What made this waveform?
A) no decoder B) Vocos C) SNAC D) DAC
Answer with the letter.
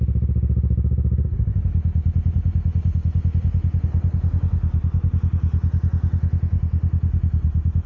A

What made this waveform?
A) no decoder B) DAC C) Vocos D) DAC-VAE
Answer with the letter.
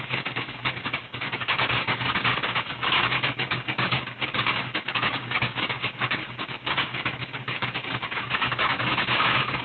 B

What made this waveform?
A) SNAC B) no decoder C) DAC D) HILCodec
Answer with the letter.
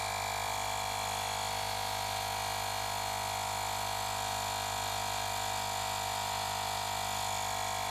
B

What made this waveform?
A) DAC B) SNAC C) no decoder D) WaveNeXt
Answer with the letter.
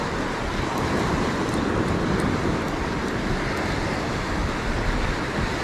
C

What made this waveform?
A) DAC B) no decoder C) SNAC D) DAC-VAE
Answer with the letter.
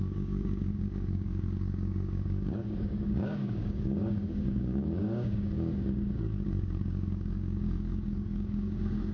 A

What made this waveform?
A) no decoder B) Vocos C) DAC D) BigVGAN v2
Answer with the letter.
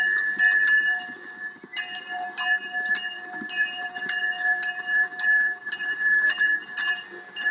A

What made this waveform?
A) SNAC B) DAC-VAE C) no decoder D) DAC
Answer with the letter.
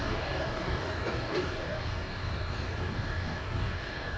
D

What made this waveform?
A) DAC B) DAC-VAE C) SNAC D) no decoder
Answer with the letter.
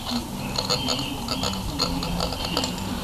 D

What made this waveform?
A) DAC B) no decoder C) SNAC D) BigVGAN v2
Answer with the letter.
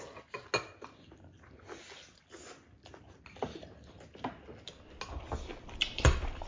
B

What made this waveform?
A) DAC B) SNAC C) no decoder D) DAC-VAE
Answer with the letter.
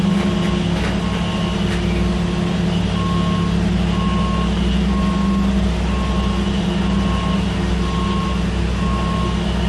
C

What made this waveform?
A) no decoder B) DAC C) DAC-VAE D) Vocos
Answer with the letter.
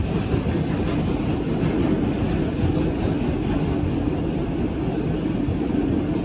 A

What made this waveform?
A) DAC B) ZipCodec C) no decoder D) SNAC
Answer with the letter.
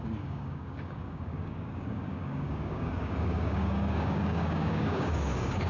A